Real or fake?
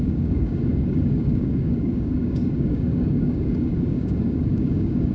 fake